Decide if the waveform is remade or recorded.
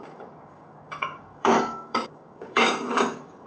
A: remade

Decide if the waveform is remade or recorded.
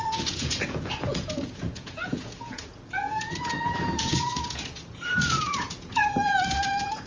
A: remade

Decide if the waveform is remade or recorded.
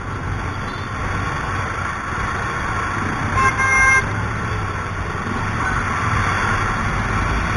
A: recorded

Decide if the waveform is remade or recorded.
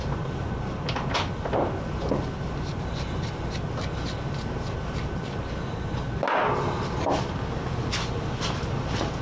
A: recorded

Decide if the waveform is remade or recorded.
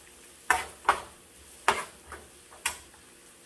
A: recorded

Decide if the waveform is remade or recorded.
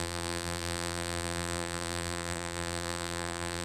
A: remade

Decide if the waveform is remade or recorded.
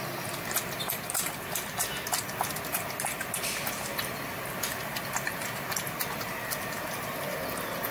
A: recorded